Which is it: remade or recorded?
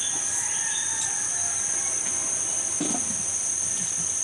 recorded